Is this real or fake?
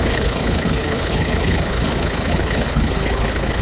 fake